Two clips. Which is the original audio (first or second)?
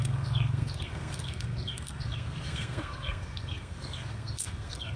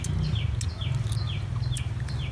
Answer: second